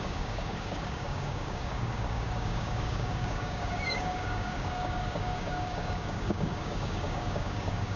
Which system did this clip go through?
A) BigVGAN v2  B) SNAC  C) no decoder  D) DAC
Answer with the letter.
D